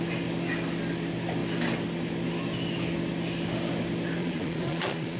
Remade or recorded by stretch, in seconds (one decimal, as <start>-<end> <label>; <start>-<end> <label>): 0.0-4.2 recorded; 4.2-5.2 remade